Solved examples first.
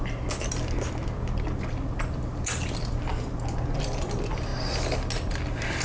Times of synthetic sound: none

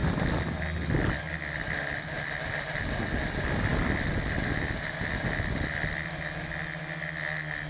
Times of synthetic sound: none

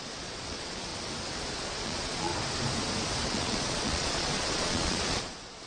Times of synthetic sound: 0.0-0.9 (vocoder, Vocos); 1.5-2.3; 3.3-5.7

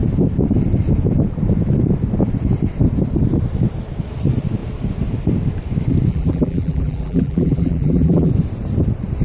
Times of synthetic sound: 6.1-8.3 (vocoder, BigVGAN v2)

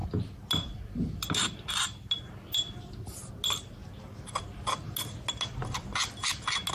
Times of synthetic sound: none

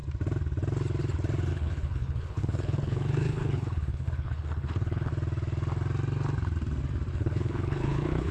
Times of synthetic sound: 1.5-5.1 (codec, HILCodec); 7.1-8.3